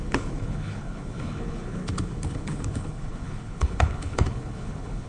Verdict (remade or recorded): remade